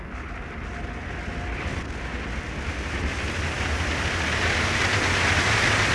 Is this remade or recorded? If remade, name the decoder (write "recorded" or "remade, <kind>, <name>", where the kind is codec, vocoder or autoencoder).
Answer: recorded